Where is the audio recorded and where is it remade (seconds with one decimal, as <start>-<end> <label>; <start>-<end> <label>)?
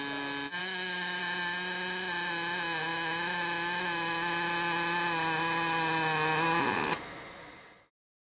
0.0-0.6 recorded; 0.6-1.2 remade; 1.2-8.3 recorded